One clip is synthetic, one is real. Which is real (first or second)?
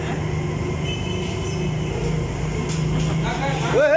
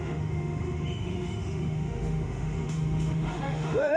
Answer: first